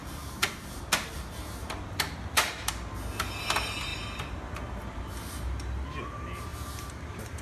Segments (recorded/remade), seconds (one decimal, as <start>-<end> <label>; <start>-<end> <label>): 0.0-0.8 remade; 0.8-1.6 recorded; 1.6-2.7 remade; 2.7-6.5 recorded; 6.5-7.4 remade